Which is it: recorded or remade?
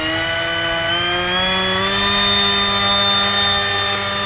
recorded